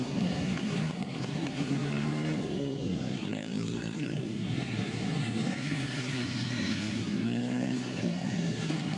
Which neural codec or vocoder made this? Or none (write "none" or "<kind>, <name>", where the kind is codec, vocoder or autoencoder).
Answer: codec, SNAC